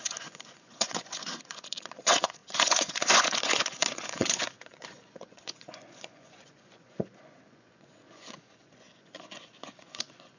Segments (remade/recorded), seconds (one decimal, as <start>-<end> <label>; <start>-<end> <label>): 0.0-10.4 remade